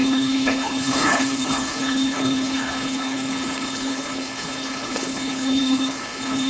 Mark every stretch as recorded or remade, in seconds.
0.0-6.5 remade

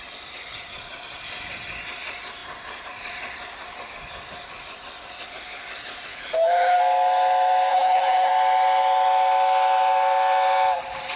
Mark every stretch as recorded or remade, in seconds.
0.0-6.1 recorded; 6.1-6.8 remade; 6.8-7.7 recorded; 7.7-8.3 remade; 8.3-11.2 recorded

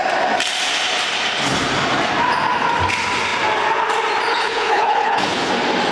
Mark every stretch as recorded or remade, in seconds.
0.0-4.3 recorded; 4.3-5.5 remade; 5.5-5.9 recorded

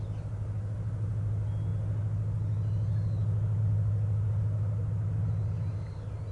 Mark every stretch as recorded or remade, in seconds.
0.0-6.3 recorded

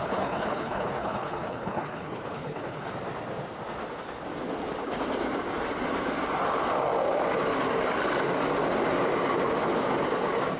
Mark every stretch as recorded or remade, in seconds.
0.0-2.9 remade; 2.9-10.6 recorded